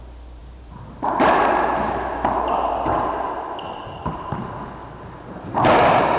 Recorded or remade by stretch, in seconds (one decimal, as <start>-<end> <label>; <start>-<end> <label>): 0.0-0.4 recorded; 0.4-2.7 remade; 2.7-6.2 recorded